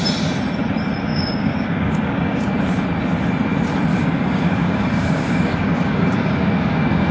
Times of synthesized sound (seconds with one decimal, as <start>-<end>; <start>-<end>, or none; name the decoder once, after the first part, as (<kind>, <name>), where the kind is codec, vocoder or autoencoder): 1.1-2.6 (codec, DAC); 3.9-7.1